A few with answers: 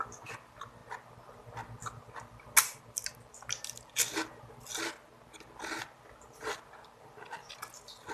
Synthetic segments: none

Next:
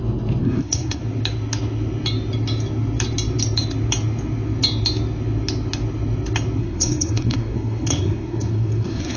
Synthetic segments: 0.4-1.0 (codec, SNAC); 6.6-9.2